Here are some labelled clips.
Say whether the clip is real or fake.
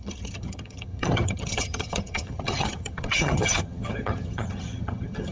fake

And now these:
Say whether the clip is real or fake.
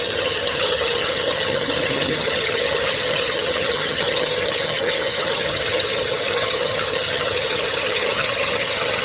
fake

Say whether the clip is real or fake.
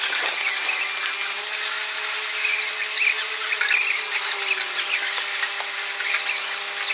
real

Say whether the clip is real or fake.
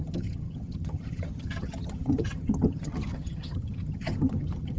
fake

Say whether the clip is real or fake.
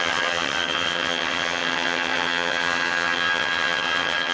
fake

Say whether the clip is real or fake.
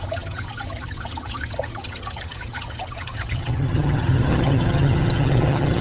fake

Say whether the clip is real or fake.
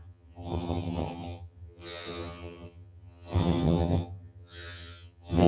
fake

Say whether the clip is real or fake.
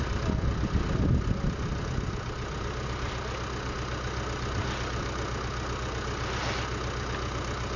real